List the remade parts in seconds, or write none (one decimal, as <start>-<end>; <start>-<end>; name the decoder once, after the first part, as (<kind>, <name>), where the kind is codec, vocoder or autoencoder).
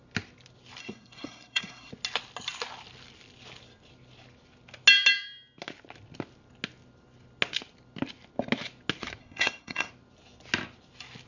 0.8-1.9 (codec, SNAC); 9.2-9.9